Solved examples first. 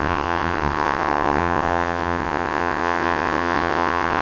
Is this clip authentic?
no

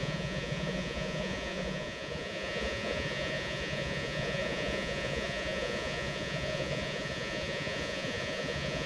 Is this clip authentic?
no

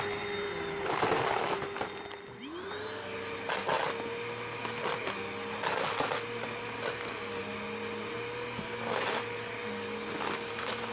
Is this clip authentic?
yes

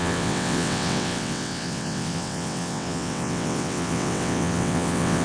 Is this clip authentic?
no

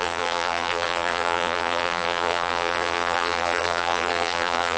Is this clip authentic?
no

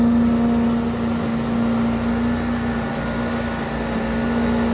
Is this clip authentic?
yes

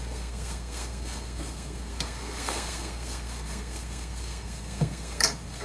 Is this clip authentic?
no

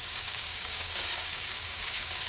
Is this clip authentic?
no